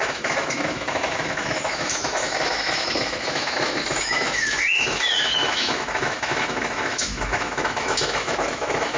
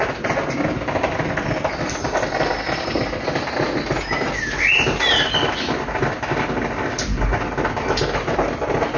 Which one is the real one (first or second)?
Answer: second